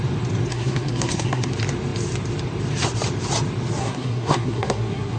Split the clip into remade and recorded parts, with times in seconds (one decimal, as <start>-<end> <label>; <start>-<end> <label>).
0.0-0.5 recorded; 0.5-1.5 remade; 1.5-3.8 recorded; 3.8-5.2 remade